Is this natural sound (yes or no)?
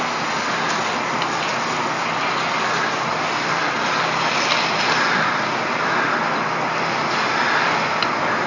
yes